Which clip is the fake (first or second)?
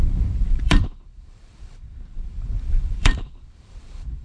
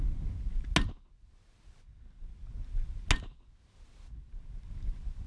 first